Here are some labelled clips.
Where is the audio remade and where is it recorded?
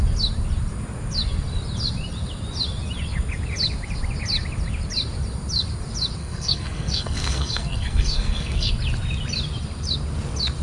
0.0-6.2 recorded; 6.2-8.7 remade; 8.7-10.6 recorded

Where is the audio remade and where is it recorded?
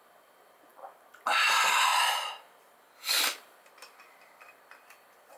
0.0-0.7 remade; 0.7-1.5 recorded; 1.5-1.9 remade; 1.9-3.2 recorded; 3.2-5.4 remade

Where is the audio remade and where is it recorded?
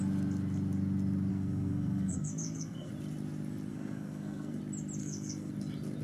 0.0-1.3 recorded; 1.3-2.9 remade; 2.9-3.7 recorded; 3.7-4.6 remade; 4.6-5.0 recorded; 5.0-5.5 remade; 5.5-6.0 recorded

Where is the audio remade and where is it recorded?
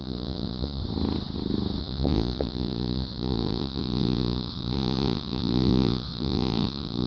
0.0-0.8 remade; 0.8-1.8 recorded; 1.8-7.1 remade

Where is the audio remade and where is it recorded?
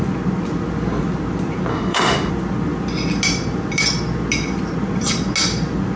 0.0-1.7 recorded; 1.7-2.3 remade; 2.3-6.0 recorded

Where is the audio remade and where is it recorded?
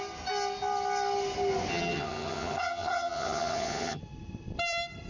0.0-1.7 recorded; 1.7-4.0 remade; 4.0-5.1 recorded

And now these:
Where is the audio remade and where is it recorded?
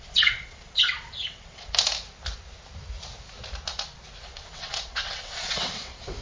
0.0-1.6 remade; 1.6-4.2 recorded; 4.2-6.2 remade